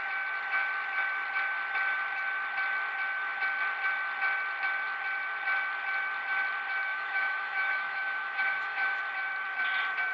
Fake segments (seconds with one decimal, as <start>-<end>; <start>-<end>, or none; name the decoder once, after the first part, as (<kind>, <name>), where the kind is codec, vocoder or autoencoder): 6.9-9.0 (autoencoder, DAC-VAE)